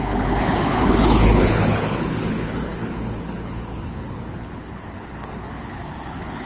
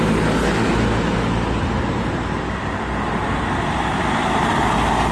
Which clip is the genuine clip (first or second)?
second